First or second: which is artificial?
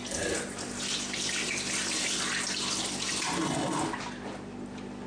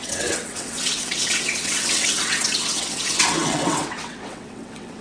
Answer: second